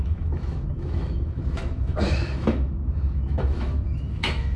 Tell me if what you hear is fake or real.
fake